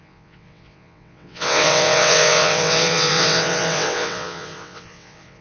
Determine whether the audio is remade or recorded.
remade